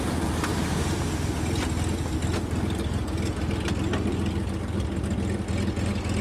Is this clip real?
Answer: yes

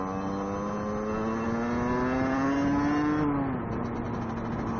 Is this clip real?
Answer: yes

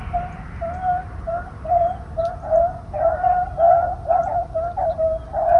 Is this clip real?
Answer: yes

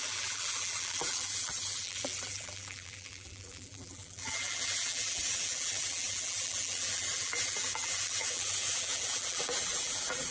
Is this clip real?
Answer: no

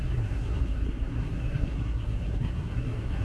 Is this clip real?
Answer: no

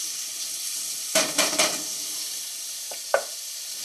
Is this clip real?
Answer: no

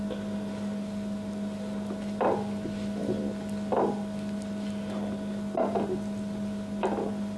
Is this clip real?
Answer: yes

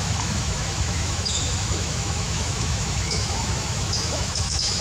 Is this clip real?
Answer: no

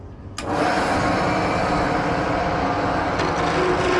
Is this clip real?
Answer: yes